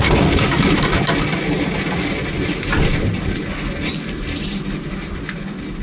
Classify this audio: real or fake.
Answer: real